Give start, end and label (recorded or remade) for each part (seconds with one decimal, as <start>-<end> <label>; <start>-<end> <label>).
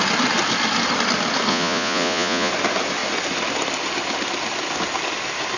0.0-1.5 recorded; 1.5-2.5 remade; 2.5-5.6 recorded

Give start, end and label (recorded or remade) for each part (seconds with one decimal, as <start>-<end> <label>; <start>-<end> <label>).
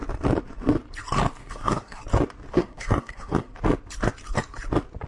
0.0-1.4 recorded; 1.4-2.0 remade; 2.0-2.5 recorded; 2.5-3.5 remade; 3.5-5.1 recorded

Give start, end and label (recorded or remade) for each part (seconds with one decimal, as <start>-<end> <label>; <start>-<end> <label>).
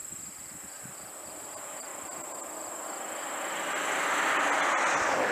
0.0-5.3 recorded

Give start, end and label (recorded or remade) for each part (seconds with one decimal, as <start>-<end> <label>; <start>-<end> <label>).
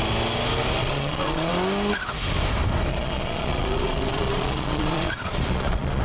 0.0-0.8 recorded; 0.8-1.5 remade; 1.5-2.9 recorded; 2.9-6.0 remade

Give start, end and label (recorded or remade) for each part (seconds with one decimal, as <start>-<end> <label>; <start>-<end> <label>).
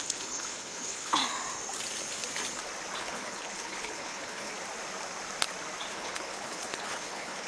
0.0-1.2 remade; 1.2-3.0 recorded; 3.0-4.5 remade; 4.5-5.9 recorded; 5.9-7.5 remade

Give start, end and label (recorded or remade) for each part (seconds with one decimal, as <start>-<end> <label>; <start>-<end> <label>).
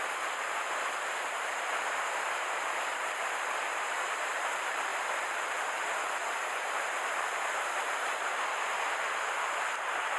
0.0-10.2 remade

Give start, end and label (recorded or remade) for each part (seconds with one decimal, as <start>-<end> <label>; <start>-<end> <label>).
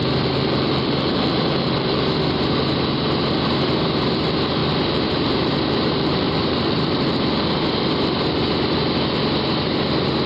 0.0-2.2 remade; 2.2-4.6 recorded; 4.6-7.4 remade; 7.4-10.3 recorded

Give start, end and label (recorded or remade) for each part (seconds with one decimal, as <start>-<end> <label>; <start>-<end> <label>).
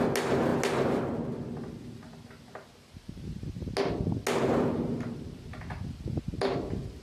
0.0-7.0 recorded